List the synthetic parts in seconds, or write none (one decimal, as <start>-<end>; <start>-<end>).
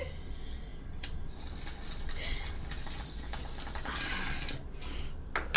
none